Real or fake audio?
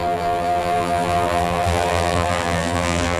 fake